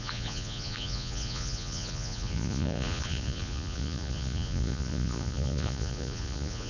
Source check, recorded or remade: remade